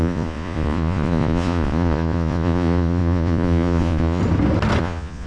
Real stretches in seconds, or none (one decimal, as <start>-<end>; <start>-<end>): 4.2-4.8